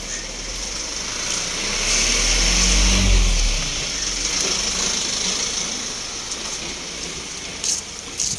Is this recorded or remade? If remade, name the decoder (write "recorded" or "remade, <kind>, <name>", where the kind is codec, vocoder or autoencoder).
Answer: recorded